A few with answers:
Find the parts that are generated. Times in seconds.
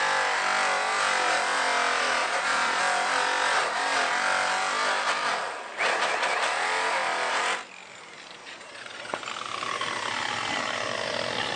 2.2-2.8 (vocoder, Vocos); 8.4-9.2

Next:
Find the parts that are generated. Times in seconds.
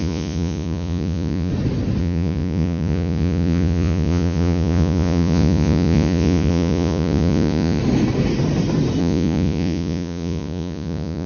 0.0-1.5 (vocoder, Vocos); 2.0-7.8; 9.0-11.3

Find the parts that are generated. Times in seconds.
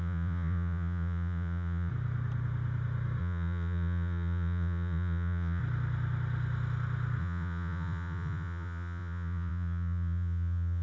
0.0-1.9 (vocoder, Vocos); 3.2-5.6; 7.2-10.8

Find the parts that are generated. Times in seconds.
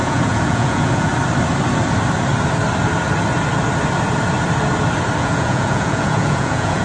0.0-1.1 (vocoder, Vocos); 5.2-6.8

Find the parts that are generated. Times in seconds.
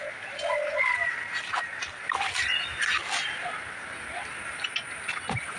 none